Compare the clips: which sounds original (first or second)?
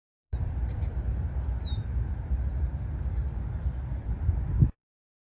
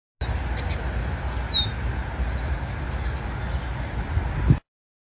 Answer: second